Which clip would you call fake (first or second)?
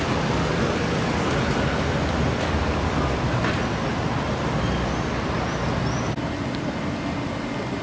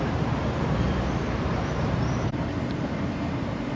second